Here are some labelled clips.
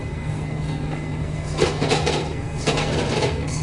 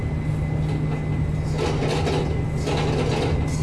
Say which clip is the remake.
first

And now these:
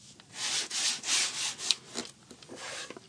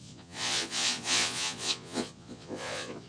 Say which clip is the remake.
second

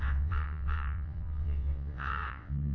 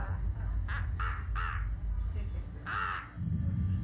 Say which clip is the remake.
first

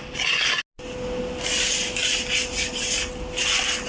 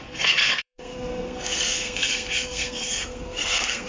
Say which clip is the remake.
second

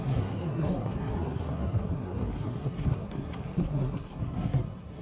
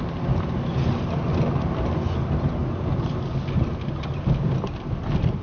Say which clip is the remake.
first